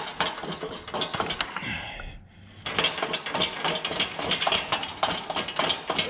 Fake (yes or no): no